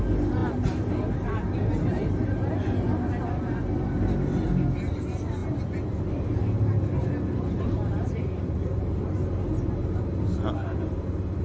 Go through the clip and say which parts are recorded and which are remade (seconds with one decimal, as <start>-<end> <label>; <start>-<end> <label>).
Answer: 0.0-11.4 recorded